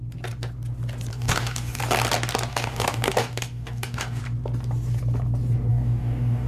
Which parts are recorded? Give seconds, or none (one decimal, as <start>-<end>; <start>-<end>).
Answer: 0.0-1.1; 1.8-2.5; 4.2-5.7

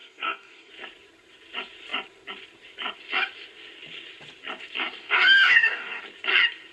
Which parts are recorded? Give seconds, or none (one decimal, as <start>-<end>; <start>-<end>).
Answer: 0.7-5.0; 6.0-6.7

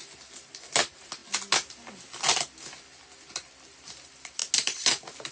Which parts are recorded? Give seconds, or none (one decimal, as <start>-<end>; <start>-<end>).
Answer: 0.0-5.3

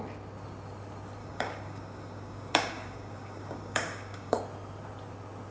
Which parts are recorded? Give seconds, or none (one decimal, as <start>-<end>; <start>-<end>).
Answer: 0.0-1.2; 4.4-5.5

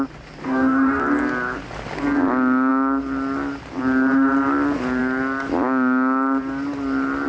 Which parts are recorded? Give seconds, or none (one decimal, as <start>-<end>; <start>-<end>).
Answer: 0.0-0.4; 1.0-7.3

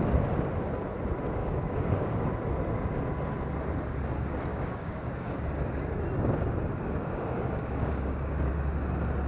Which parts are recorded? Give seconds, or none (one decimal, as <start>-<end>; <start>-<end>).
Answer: 0.0-1.4; 2.3-4.5; 5.5-7.0; 8.5-9.3